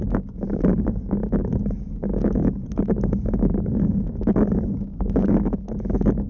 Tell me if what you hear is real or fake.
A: fake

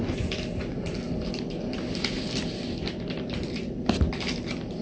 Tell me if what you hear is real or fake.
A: real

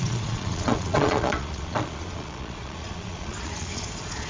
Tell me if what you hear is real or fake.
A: fake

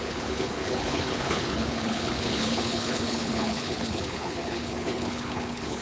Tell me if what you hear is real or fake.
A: fake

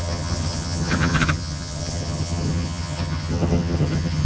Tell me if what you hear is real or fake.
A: fake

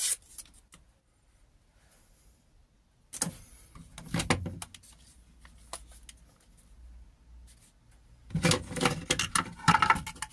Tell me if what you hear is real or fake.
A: real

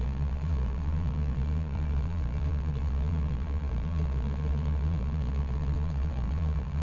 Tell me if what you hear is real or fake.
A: fake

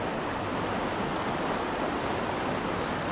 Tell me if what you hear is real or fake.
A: real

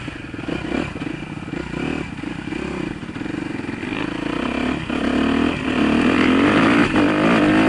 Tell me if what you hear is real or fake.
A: real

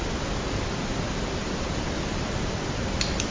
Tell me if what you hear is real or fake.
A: real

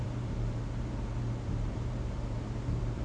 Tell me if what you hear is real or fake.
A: fake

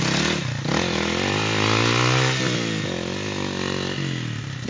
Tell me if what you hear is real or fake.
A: real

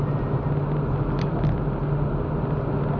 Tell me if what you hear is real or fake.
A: real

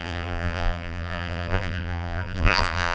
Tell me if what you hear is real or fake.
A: fake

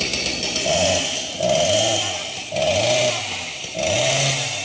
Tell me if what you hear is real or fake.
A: real